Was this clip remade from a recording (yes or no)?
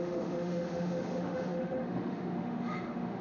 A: yes